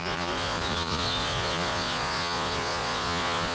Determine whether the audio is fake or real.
fake